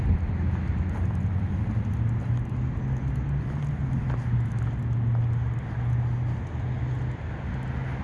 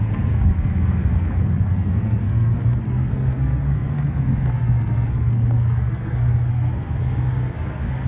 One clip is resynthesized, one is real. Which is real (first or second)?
first